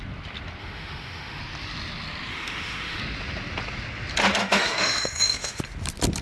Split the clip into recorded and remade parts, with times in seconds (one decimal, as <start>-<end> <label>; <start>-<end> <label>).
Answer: 0.0-0.6 recorded; 0.6-1.4 remade; 1.4-2.3 recorded; 2.3-3.0 remade; 3.0-4.4 recorded; 4.4-5.6 remade; 5.6-6.2 recorded